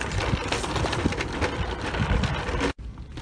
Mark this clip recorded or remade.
recorded